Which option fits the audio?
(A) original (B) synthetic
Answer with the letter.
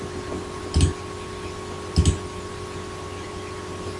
A